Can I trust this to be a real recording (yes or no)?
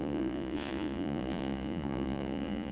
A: no